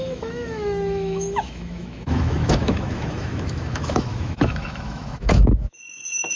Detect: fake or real fake